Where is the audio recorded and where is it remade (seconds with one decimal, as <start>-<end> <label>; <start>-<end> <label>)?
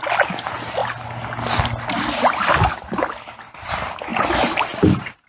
0.0-5.3 recorded